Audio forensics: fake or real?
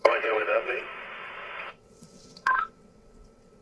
fake